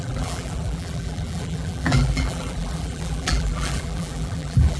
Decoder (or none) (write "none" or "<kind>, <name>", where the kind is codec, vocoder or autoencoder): vocoder, BigVGAN v2